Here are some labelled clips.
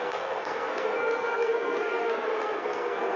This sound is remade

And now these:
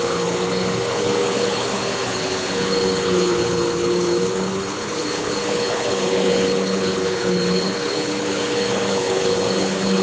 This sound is remade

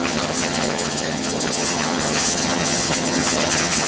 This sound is remade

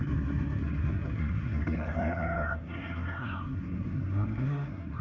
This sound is remade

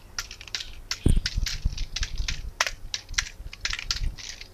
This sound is recorded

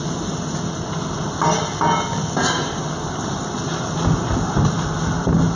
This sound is recorded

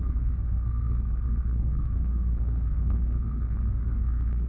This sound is remade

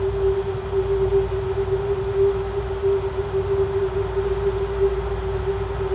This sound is recorded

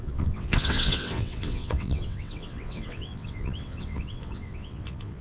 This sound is remade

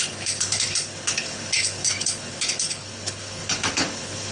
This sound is remade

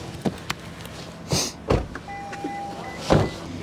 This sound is recorded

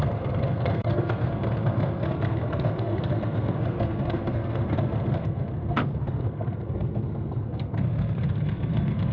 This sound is remade